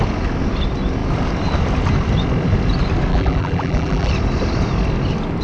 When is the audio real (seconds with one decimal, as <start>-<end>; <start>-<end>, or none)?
0.0-3.1; 4.1-5.4